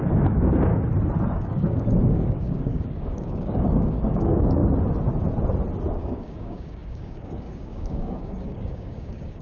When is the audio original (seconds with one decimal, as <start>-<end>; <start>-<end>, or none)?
0.7-1.2; 4.6-5.9